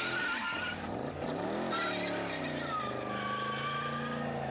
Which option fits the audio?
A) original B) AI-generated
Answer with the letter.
A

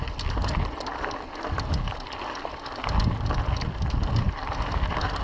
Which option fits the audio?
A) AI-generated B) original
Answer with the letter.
B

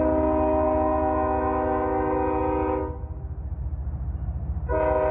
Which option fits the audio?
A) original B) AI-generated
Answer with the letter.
A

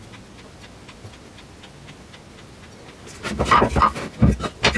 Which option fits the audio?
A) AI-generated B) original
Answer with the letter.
B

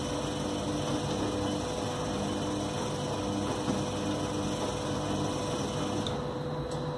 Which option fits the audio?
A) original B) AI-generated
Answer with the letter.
A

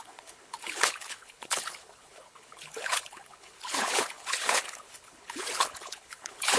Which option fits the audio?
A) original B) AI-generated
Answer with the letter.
B